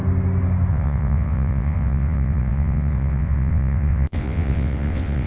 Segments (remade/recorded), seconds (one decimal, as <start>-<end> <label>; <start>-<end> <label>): 0.0-0.7 recorded; 0.7-5.3 remade